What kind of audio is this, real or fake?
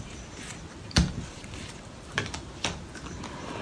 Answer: real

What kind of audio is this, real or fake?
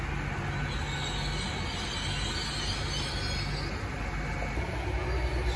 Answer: real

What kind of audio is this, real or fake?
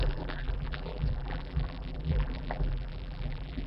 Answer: fake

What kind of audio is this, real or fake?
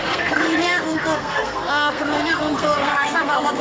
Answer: fake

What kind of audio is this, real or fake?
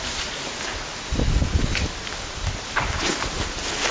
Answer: real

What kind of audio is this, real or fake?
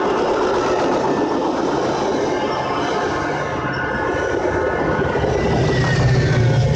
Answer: real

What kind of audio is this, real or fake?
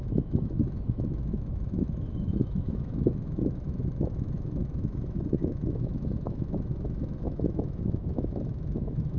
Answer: fake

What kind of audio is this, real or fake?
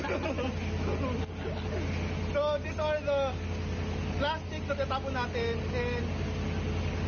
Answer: real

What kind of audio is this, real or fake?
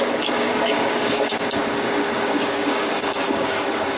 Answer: fake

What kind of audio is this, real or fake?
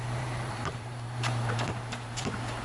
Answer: fake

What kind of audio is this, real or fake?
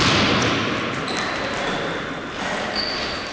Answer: real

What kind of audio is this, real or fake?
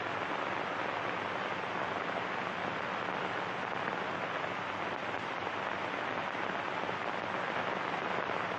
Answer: real